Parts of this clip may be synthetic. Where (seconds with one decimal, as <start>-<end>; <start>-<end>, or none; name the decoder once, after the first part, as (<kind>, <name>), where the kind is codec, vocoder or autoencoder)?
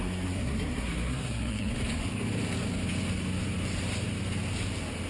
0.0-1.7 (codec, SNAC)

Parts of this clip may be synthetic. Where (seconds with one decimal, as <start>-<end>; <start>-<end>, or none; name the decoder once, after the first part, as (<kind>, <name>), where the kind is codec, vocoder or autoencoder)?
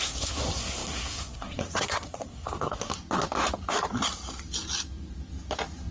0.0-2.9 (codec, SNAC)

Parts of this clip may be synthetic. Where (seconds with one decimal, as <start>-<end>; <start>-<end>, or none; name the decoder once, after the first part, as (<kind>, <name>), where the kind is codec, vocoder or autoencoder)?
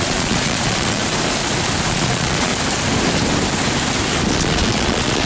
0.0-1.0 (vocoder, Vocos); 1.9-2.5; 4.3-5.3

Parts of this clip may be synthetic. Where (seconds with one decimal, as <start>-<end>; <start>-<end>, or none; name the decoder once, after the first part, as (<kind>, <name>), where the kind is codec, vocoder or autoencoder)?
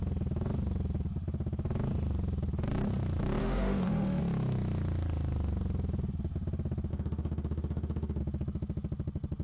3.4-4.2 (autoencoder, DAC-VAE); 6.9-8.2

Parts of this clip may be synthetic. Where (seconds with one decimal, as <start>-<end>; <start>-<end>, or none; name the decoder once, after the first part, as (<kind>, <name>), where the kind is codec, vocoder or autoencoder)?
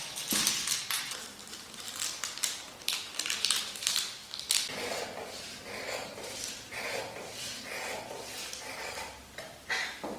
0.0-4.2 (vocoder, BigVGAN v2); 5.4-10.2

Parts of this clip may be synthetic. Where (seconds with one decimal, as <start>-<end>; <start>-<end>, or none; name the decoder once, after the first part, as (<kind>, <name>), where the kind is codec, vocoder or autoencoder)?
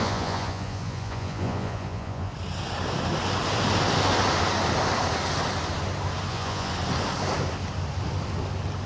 0.0-2.3 (vocoder, Vocos); 6.3-6.7